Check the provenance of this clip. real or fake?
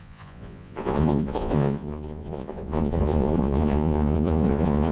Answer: fake